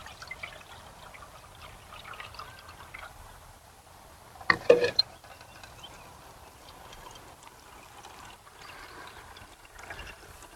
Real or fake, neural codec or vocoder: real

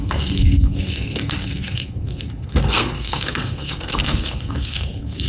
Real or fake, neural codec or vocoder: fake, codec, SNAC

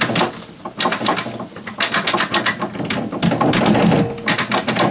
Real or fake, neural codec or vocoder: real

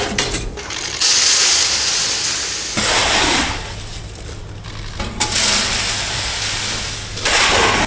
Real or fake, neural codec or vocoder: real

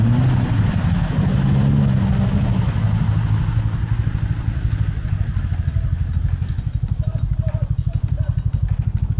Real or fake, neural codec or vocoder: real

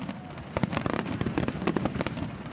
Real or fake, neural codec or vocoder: fake, vocoder, BigVGAN v2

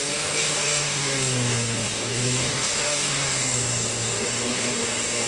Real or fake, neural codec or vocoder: fake, codec, DAC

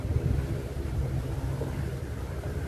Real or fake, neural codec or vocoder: fake, vocoder, BigVGAN v2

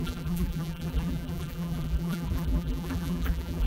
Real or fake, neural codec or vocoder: fake, vocoder, BigVGAN v2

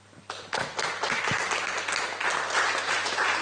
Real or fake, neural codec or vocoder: real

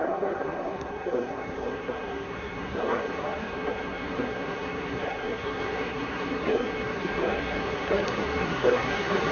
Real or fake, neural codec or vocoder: fake, codec, SNAC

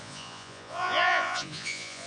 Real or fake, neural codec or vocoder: fake, vocoder, Vocos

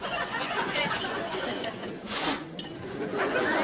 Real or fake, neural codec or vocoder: fake, vocoder, Vocos